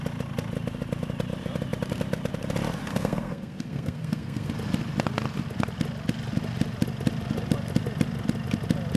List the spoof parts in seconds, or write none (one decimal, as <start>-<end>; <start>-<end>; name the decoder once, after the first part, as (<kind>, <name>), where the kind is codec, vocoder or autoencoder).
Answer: 2.9-4.5 (codec, SNAC)

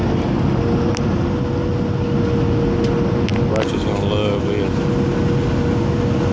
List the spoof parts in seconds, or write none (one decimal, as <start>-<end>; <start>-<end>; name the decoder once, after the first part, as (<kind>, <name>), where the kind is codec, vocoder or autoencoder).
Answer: none

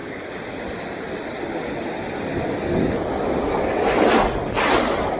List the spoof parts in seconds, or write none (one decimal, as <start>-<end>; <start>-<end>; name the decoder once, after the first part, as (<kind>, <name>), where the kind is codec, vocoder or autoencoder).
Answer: none

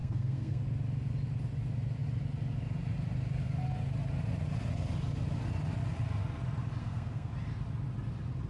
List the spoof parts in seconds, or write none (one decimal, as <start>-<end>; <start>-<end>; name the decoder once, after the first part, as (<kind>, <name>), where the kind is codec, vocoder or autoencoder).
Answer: 0.0-0.6 (codec, SNAC); 6.8-7.3

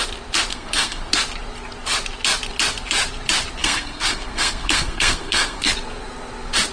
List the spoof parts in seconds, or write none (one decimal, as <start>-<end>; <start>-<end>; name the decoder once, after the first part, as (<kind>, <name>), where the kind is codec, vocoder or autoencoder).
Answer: 0.5-1.1 (codec, SNAC); 3.6-5.7

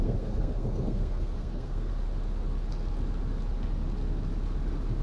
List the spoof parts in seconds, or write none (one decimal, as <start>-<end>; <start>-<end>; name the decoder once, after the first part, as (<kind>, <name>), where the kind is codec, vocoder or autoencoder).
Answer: 0.0-1.9 (codec, SNAC)

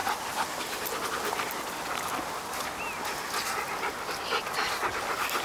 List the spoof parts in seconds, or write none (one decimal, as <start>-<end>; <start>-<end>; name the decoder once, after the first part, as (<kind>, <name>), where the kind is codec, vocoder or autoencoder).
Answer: none

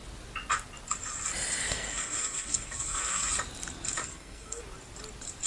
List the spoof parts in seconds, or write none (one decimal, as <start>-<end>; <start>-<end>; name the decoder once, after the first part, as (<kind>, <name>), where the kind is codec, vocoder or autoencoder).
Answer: 1.6-3.3 (codec, SNAC); 4.0-4.6